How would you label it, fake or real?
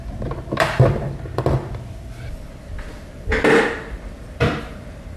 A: fake